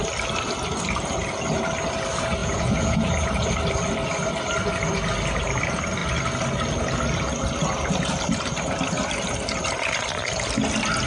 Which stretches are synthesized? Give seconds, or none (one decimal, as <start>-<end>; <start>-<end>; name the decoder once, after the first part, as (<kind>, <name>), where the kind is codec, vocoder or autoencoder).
2.4-3.5 (vocoder, Vocos)